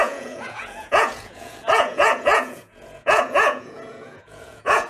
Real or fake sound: fake